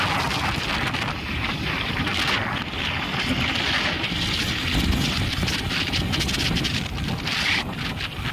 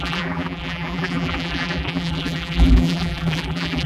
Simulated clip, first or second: second